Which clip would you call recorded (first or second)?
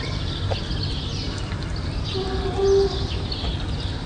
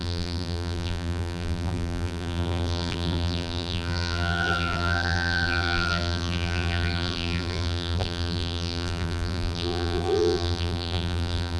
first